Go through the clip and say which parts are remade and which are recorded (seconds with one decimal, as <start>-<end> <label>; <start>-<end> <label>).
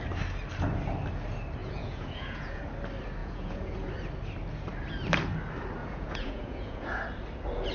0.0-1.6 recorded; 1.6-2.6 remade; 2.6-3.2 recorded; 3.2-3.9 remade; 3.9-5.8 recorded; 5.8-7.0 remade; 7.0-7.7 recorded